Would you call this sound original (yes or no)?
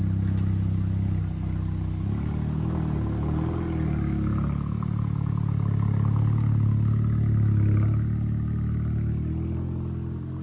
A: yes